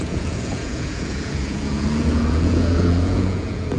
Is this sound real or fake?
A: fake